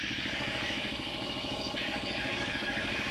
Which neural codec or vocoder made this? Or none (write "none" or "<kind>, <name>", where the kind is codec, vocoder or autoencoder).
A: codec, DAC